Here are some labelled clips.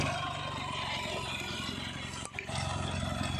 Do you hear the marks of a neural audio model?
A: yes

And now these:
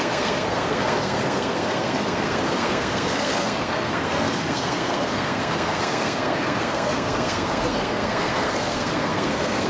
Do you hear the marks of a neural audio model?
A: yes